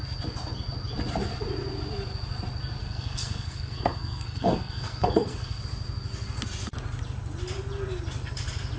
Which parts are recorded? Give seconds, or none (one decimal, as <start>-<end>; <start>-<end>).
0.0-2.8; 5.6-8.8

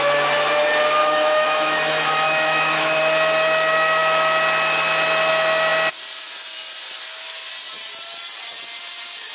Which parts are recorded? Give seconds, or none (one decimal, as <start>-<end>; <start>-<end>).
0.0-1.0; 3.0-9.3

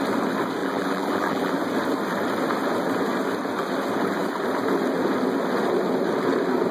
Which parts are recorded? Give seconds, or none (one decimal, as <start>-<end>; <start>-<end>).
0.0-0.6; 1.5-6.7

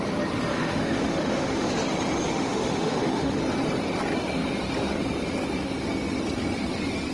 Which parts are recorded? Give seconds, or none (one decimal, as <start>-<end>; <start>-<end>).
0.0-0.5; 1.7-2.3; 3.4-7.1